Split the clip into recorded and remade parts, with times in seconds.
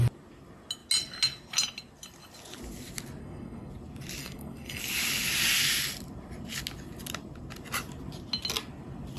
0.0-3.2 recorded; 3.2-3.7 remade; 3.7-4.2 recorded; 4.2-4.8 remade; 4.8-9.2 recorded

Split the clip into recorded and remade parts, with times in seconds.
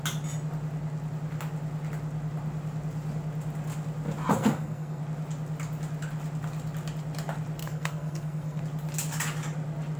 0.0-4.3 recorded; 4.3-5.0 remade; 5.0-7.6 recorded; 7.6-8.6 remade; 8.6-10.0 recorded